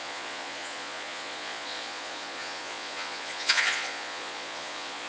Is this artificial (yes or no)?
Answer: yes